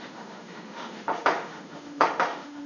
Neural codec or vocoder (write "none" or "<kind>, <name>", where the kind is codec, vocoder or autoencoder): autoencoder, DAC-VAE